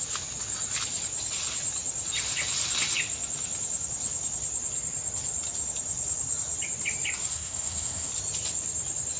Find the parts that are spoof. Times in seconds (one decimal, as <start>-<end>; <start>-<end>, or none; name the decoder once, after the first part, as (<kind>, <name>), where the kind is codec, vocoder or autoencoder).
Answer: 7.3-8.1 (codec, SNAC)